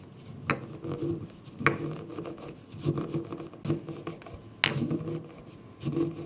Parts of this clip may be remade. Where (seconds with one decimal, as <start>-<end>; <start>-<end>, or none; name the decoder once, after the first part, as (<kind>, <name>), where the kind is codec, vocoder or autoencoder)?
none